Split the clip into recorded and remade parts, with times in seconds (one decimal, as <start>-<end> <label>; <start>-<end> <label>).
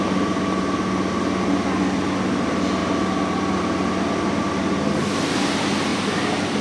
0.0-5.9 recorded; 5.9-6.6 remade